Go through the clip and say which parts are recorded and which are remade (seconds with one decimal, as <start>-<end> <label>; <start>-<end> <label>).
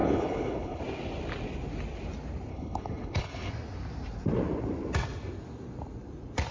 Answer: 0.0-0.8 remade; 0.8-2.5 recorded; 2.5-3.5 remade; 3.5-6.5 recorded